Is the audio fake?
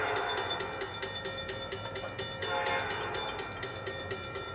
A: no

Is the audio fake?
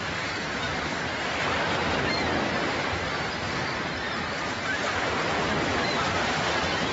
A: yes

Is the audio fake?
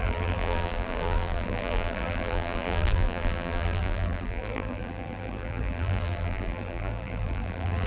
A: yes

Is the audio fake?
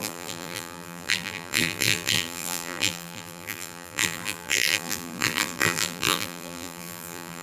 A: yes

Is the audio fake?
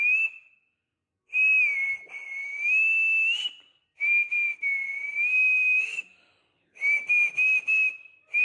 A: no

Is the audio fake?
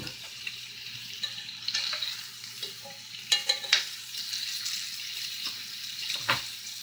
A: yes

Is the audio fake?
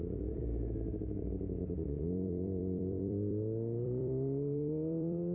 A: yes